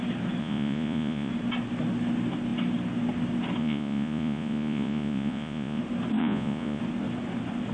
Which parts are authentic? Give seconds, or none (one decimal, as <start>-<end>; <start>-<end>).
0.0-0.4; 1.3-3.6; 5.8-6.2; 6.8-7.7